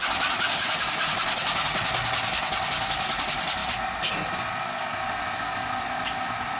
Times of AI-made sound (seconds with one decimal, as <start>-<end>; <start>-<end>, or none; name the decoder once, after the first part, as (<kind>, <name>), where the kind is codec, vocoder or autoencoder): none